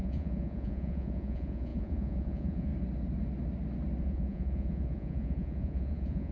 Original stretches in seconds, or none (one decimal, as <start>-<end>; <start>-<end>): 2.7-4.0